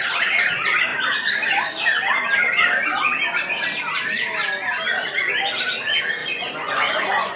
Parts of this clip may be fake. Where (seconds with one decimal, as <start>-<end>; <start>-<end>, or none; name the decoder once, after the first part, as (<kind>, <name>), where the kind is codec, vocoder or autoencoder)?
6.2-7.4 (vocoder, Vocos)